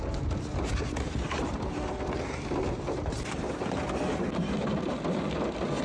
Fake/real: real